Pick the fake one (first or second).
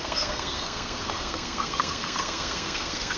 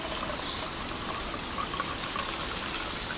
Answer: first